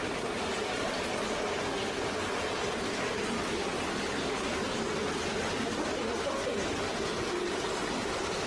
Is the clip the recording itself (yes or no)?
yes